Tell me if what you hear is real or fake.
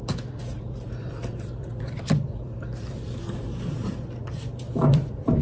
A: fake